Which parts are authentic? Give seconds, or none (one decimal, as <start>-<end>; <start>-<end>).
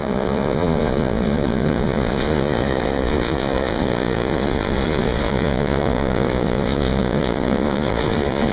none